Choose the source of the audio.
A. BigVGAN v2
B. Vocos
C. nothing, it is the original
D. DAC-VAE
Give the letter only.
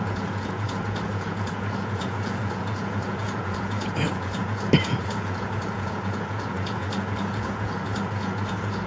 B